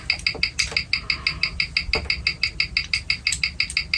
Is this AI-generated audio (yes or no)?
no